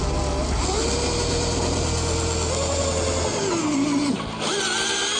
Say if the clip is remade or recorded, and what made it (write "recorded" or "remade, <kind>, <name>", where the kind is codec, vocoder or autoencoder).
recorded